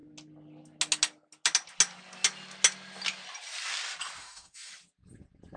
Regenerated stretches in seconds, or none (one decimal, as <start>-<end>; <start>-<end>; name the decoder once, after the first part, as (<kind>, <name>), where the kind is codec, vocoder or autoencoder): 4.2-4.7 (autoencoder, DAC-VAE)